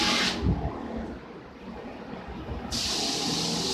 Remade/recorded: recorded